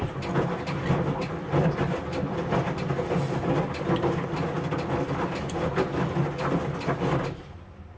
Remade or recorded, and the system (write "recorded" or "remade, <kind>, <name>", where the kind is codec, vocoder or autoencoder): recorded